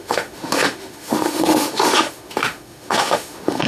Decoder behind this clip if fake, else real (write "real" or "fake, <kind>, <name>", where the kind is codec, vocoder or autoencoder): fake, autoencoder, DAC-VAE